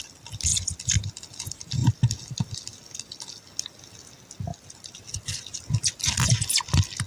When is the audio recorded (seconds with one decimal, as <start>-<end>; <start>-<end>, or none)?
0.0-0.5; 1.2-7.1